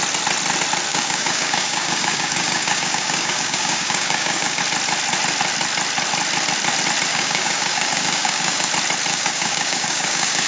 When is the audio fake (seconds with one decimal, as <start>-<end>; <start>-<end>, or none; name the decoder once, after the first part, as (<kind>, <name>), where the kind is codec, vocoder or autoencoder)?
0.9-4.6 (codec, DAC); 7.1-8.7; 9.1-10.5